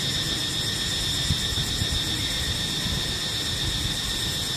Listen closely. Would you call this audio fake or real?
real